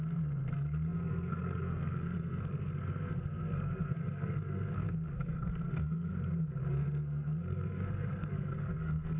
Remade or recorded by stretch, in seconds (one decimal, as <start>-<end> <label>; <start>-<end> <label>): 0.0-6.1 remade; 6.1-6.7 recorded; 6.7-9.2 remade